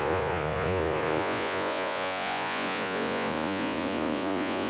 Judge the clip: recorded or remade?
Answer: remade